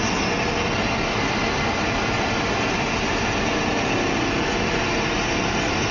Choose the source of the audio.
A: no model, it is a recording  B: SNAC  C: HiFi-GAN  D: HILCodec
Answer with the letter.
A